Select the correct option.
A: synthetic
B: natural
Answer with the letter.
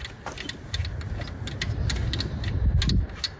B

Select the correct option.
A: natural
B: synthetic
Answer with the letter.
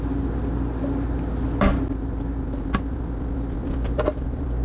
A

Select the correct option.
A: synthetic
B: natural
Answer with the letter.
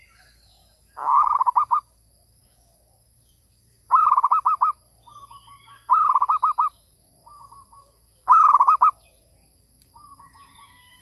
A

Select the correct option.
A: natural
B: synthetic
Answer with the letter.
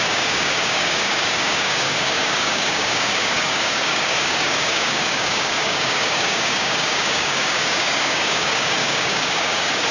B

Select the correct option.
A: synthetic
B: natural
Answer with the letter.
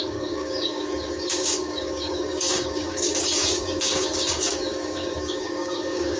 A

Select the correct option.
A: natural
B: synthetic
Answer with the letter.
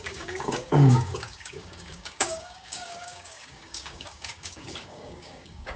B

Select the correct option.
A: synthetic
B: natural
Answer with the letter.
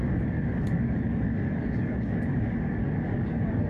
A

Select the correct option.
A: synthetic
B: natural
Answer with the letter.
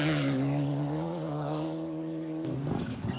A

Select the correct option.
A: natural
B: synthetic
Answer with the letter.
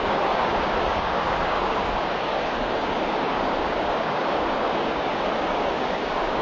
B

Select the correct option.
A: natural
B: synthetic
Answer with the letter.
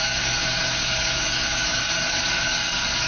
B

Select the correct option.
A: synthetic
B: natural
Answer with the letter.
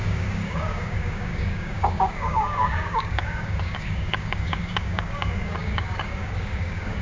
A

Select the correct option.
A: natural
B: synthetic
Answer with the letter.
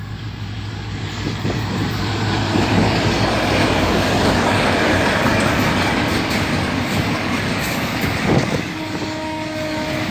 B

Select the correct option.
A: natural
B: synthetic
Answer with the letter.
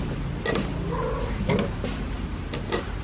A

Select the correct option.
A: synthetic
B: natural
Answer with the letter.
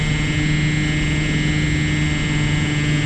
B